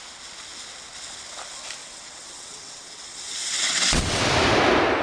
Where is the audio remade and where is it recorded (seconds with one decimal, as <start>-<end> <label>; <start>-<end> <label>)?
0.0-1.8 recorded; 1.8-4.2 remade; 4.2-5.0 recorded